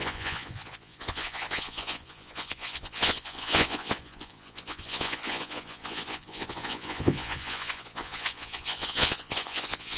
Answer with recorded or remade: remade